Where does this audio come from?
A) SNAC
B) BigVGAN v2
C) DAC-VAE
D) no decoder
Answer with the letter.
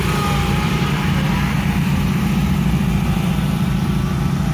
B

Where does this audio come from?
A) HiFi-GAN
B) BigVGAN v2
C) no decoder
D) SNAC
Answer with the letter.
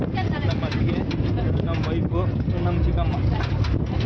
C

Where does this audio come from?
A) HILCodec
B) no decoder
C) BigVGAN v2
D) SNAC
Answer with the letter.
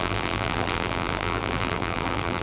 C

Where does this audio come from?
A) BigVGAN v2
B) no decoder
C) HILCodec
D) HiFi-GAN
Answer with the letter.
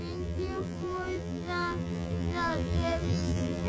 A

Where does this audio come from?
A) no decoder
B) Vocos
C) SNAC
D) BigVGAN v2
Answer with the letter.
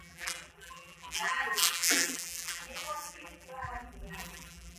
D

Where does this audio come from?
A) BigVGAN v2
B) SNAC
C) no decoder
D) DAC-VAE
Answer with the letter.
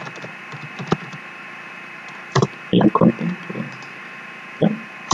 A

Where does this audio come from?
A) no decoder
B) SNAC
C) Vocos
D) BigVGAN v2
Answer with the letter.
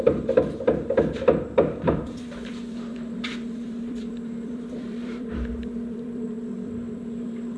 D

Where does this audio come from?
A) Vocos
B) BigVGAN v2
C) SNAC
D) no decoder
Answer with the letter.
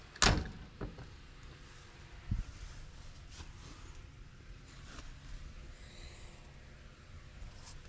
D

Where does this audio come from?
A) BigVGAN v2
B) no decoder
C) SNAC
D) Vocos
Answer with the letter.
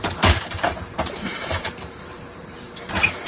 A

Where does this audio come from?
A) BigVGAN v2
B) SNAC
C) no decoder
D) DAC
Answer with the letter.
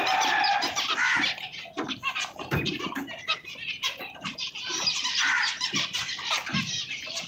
A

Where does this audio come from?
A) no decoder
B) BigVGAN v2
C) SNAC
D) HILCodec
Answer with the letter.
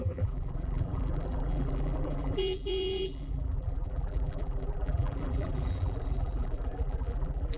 B